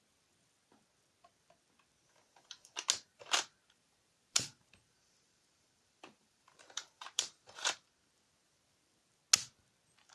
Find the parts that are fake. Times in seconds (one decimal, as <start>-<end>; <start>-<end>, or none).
3.1-7.9

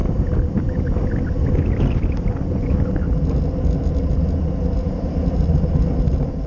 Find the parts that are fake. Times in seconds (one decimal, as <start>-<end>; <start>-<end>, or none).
none

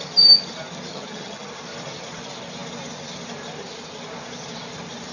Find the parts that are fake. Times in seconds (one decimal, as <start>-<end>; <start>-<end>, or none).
0.9-1.5